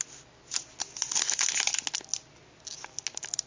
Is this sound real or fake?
real